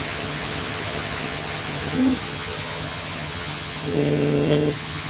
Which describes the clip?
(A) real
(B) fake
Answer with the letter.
B